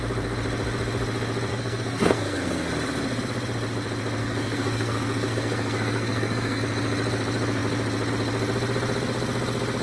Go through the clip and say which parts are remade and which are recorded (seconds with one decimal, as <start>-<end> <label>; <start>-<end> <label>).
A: 0.0-1.5 recorded; 1.5-2.7 remade; 2.7-4.2 recorded; 4.2-6.6 remade; 6.6-9.8 recorded